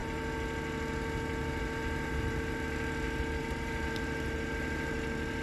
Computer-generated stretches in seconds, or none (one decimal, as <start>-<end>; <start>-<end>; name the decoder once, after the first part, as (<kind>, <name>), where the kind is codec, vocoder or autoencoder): none